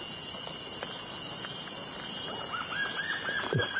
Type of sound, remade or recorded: recorded